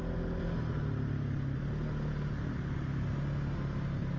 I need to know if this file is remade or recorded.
recorded